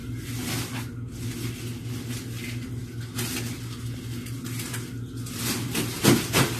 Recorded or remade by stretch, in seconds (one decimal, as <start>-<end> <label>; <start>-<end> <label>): 0.0-6.6 recorded